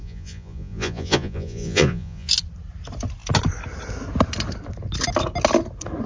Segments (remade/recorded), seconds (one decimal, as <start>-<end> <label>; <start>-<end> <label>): 0.0-2.3 remade; 2.3-6.1 recorded